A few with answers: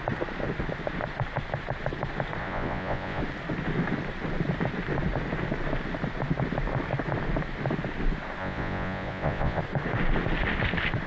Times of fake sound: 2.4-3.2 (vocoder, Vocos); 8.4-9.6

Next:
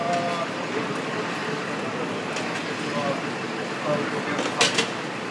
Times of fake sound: none

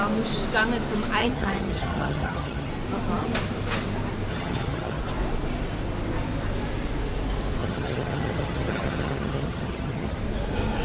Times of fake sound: 1.2-2.7 (vocoder, HiFi-GAN); 4.3-5.0; 7.6-10.2

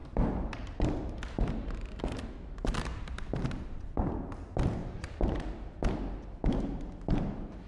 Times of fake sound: 0.0-1.1 (vocoder, BigVGAN v2); 2.9-4.1; 4.8-5.4